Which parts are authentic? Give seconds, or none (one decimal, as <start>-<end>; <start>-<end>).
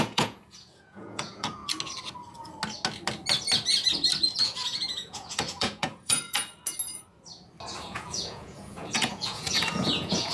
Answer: 1.6-4.4; 6.4-7.8